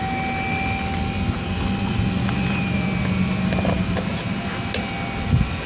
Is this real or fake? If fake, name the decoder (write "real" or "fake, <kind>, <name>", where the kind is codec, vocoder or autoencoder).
real